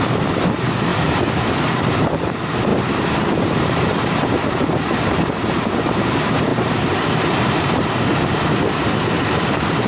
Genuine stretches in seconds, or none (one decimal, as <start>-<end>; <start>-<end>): none